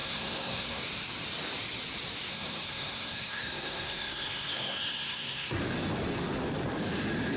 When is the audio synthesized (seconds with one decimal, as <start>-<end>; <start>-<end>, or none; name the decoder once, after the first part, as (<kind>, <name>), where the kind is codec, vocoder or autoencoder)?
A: 0.0-0.8 (codec, SNAC); 2.3-5.6